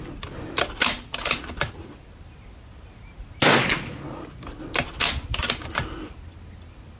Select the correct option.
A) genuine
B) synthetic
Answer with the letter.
A